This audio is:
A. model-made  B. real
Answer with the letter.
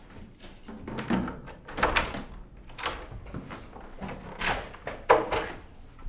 B